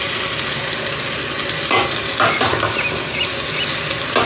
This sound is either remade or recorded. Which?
recorded